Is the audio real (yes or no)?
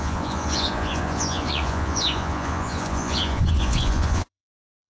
no